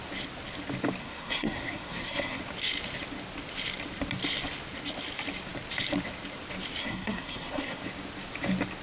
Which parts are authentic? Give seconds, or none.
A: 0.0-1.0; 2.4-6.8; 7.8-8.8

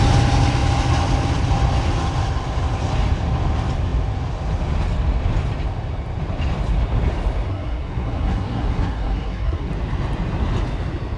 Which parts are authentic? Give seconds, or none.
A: 0.0-7.5; 9.7-11.2

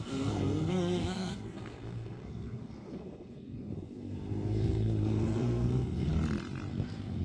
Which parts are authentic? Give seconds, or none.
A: 6.1-6.7

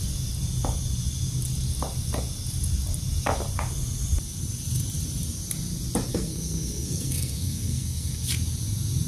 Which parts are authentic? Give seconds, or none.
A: 0.0-6.1; 8.3-9.1

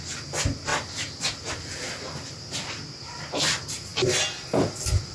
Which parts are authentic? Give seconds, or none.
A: 0.0-5.1